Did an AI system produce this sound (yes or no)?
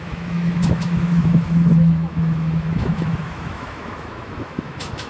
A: yes